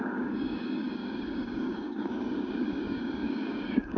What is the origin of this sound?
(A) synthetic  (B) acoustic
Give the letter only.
A